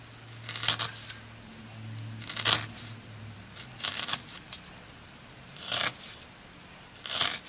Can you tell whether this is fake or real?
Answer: real